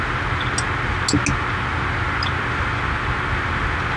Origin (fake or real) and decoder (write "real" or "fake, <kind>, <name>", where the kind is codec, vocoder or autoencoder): real